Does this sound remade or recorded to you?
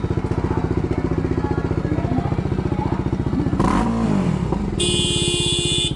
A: recorded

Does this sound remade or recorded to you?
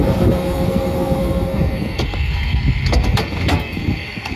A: remade